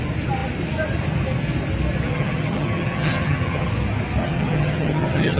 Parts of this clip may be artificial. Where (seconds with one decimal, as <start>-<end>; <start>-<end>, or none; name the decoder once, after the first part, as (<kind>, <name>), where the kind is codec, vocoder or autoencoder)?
2.1-3.7 (vocoder, HiFi-GAN); 4.2-5.4